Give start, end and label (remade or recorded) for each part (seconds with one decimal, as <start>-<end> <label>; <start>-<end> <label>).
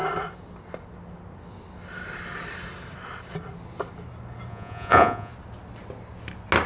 0.0-4.5 recorded; 4.5-5.3 remade; 5.3-6.7 recorded